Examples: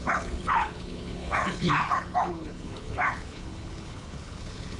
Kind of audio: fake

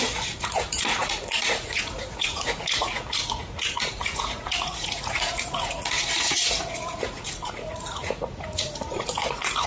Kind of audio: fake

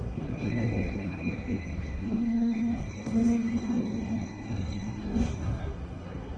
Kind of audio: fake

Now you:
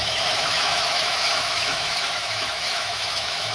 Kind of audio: fake